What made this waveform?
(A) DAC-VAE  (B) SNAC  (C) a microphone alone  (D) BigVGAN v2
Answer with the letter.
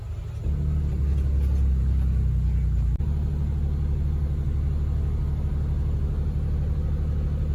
C